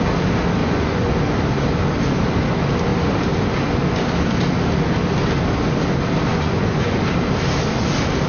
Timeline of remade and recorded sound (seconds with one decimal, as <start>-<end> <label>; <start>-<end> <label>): 0.0-0.6 recorded; 0.6-1.1 remade; 1.1-6.3 recorded; 6.3-7.0 remade; 7.0-8.3 recorded